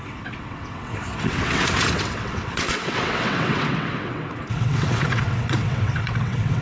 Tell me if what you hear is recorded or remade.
remade